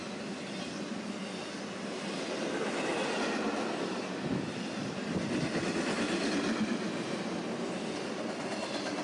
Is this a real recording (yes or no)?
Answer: yes